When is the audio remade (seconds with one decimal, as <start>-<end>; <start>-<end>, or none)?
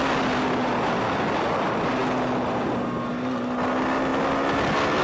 none